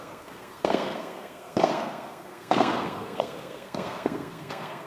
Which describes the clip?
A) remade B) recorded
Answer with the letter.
A